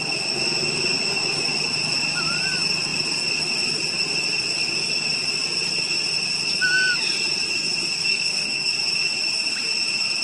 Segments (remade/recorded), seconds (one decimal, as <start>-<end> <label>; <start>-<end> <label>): 0.0-8.1 recorded; 8.1-8.7 remade; 8.7-10.2 recorded